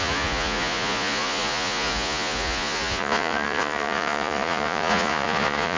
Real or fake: fake